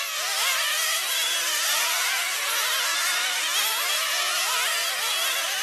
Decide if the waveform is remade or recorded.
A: recorded